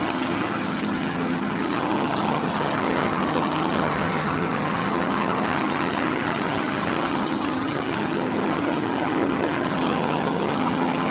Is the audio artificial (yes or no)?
yes